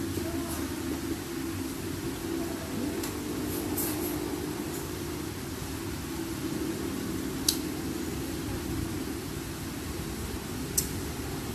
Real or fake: real